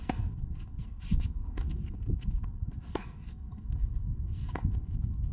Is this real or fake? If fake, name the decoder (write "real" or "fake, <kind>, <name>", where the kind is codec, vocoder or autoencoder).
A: fake, codec, SNAC